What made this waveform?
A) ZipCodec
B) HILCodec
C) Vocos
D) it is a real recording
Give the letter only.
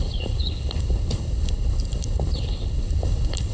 B